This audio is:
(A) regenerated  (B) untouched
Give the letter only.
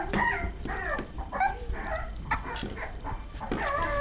B